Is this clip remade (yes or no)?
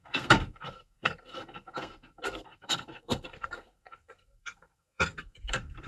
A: yes